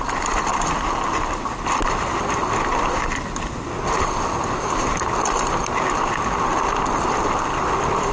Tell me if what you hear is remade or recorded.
recorded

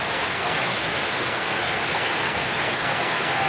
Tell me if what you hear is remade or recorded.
remade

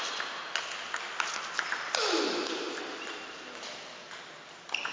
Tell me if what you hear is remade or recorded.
recorded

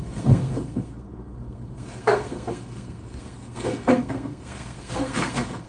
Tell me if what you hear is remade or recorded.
remade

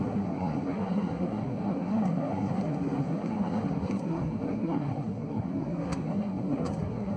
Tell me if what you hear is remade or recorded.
remade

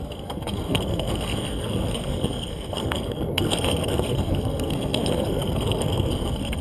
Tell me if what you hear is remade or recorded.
remade